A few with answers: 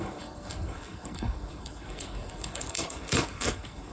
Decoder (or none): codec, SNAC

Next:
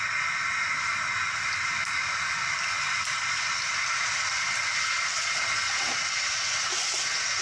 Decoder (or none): none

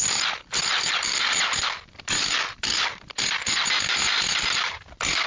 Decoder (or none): none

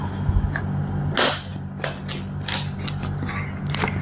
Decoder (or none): none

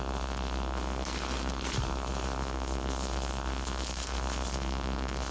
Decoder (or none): codec, SNAC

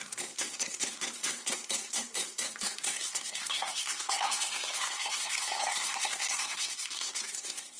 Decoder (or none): codec, SNAC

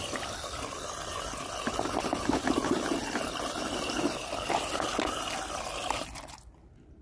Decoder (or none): none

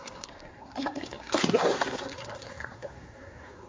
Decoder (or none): codec, SNAC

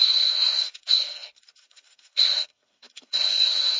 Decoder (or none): codec, SNAC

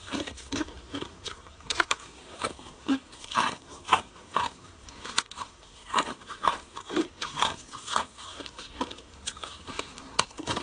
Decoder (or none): codec, SNAC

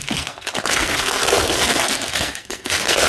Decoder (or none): codec, SNAC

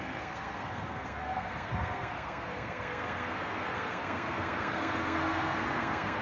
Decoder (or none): codec, SNAC